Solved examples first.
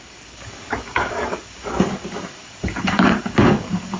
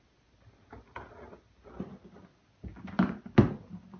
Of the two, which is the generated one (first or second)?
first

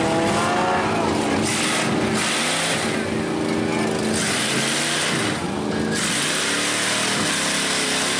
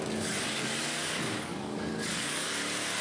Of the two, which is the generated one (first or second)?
second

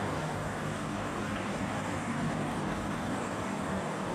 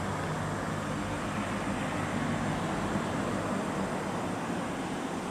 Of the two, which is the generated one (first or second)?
first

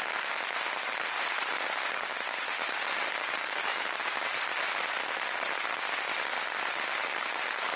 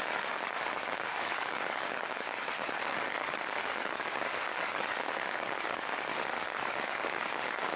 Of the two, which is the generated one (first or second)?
second